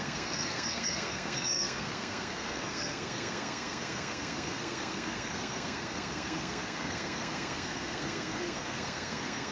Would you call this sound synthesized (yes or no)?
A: yes